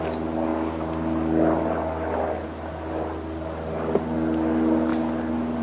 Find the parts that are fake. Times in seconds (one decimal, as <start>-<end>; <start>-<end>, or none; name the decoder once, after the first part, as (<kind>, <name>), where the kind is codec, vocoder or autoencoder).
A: none